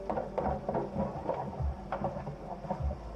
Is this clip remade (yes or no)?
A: no